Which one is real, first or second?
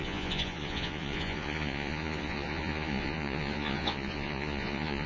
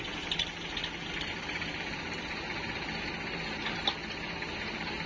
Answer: second